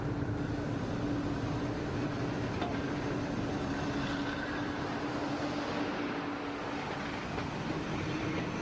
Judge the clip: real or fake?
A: real